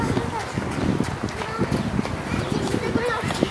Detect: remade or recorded recorded